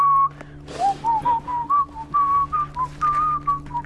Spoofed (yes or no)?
no